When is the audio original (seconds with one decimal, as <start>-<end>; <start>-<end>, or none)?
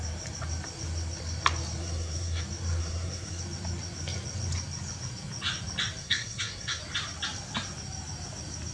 0.0-1.8; 2.4-2.8; 3.4-6.0; 6.8-8.7